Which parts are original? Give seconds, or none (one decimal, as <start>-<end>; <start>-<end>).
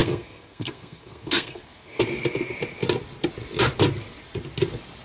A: 2.0-5.0